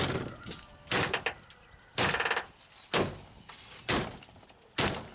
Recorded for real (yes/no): yes